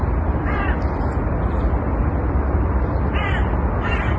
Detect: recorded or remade recorded